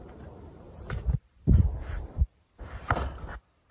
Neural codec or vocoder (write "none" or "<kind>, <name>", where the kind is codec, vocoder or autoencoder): vocoder, BigVGAN v2